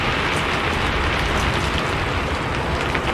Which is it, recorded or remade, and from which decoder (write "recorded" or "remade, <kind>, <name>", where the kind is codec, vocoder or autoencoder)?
recorded